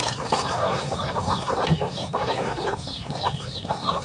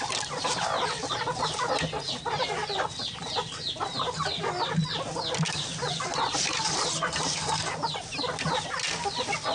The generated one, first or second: first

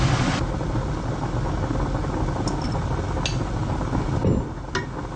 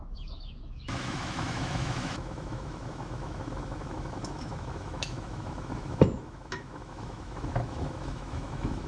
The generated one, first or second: second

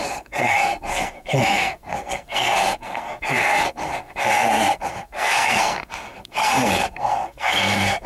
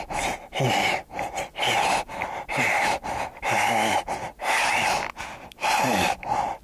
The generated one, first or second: first